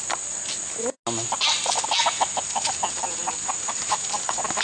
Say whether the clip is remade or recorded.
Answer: recorded